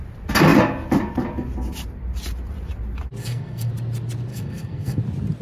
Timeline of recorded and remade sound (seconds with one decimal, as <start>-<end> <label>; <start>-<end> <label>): 0.0-3.2 recorded; 3.2-3.7 remade; 3.7-4.3 recorded; 4.3-5.0 remade; 5.0-5.4 recorded